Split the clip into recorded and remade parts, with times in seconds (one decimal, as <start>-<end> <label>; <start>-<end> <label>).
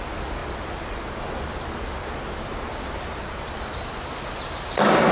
0.0-5.1 recorded